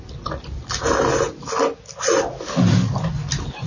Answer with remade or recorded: recorded